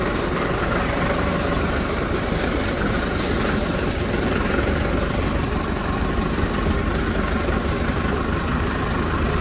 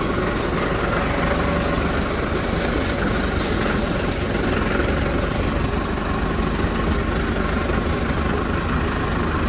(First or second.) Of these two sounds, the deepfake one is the first